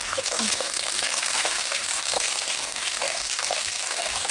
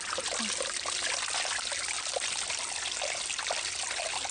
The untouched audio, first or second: second